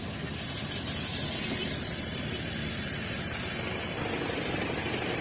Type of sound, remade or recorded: remade